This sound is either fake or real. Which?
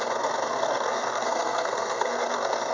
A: fake